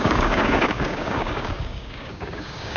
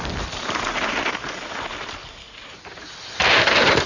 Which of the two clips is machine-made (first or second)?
first